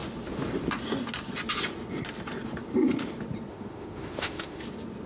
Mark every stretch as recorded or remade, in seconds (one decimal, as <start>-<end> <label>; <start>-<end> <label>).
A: 0.0-3.5 recorded; 3.5-4.6 remade; 4.6-5.1 recorded